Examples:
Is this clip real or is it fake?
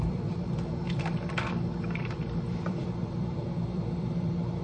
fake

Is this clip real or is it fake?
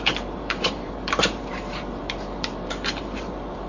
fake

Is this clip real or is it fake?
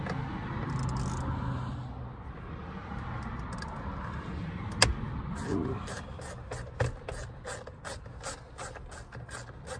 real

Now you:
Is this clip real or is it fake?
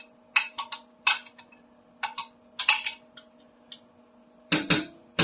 real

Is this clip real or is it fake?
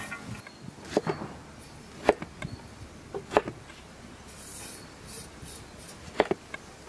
real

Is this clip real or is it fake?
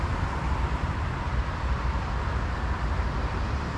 fake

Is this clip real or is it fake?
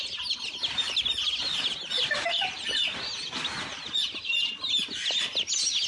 real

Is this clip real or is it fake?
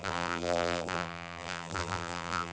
fake